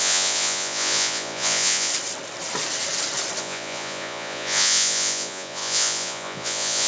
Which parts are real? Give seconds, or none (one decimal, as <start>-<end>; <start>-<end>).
1.9-3.4

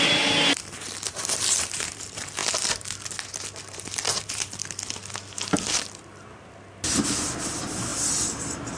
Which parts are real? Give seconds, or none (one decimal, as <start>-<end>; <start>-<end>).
0.0-8.8

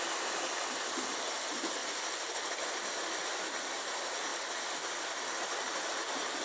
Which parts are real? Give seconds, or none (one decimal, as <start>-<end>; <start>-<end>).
0.0-6.4